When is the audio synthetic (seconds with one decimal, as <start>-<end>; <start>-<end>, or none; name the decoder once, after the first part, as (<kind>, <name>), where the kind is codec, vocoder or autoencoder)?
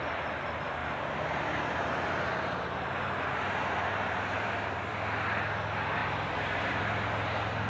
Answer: 0.8-4.9 (vocoder, BigVGAN v2); 6.0-6.8